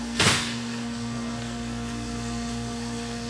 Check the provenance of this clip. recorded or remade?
remade